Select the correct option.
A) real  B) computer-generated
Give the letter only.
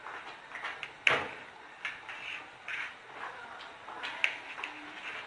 A